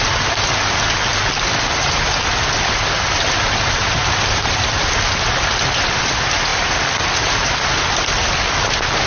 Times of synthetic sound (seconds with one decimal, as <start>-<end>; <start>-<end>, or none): none